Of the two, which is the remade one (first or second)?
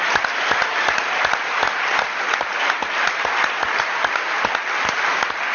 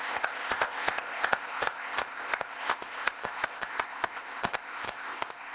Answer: second